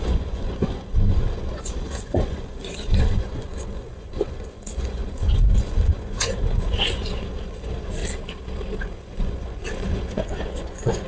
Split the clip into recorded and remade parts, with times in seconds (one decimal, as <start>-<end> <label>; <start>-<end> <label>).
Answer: 0.0-8.0 remade; 8.0-8.8 recorded; 8.8-11.1 remade